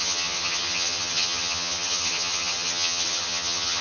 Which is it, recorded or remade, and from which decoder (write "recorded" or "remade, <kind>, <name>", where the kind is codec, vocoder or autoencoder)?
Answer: remade, vocoder, HiFi-GAN